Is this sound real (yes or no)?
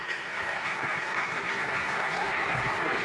no